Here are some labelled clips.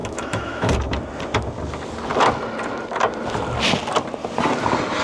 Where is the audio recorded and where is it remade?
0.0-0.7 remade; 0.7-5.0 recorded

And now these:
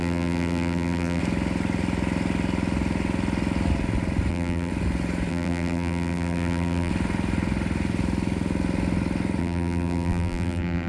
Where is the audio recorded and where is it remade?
0.0-1.2 remade; 1.2-4.3 recorded; 4.3-4.7 remade; 4.7-5.3 recorded; 5.3-6.9 remade; 6.9-9.4 recorded; 9.4-10.9 remade

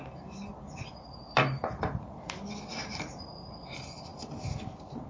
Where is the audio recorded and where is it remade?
0.0-5.1 recorded